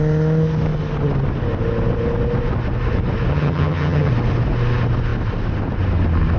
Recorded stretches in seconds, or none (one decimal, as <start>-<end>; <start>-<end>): 0.0-3.3; 4.1-6.4